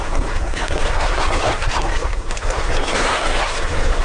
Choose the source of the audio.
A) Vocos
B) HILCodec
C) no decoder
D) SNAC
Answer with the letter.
D